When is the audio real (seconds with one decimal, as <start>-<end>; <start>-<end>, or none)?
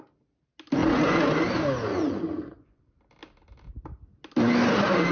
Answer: 0.0-0.8; 1.3-1.9; 2.8-5.1